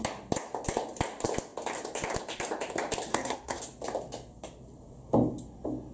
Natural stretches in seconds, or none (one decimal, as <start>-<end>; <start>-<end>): 0.0-3.1; 3.6-5.9